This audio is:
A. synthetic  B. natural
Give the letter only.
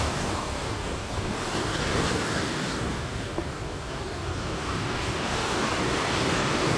A